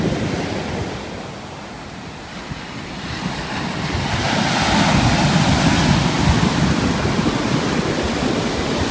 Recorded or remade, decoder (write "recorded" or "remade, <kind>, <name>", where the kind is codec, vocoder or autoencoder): recorded